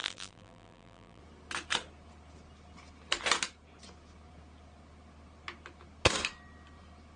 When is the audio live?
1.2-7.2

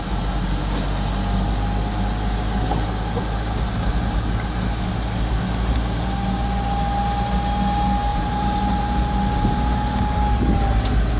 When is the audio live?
0.0-8.1; 8.8-11.2

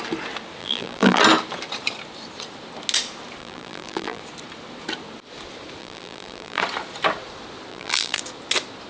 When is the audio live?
0.0-0.6; 1.2-3.4; 4.2-5.8; 6.6-7.7; 8.2-8.9

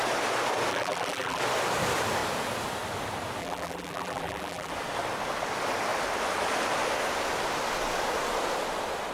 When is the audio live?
0.0-0.7; 1.4-3.4; 4.7-9.1